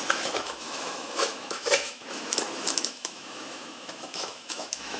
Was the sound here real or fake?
fake